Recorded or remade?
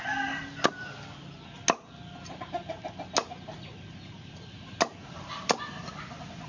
recorded